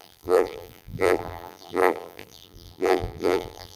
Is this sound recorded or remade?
remade